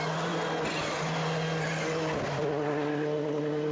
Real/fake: real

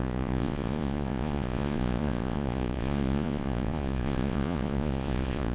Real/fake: fake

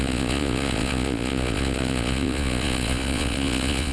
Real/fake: fake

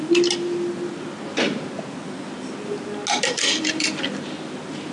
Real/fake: real